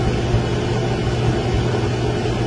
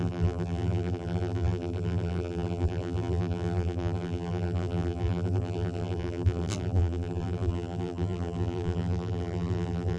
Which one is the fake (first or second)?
second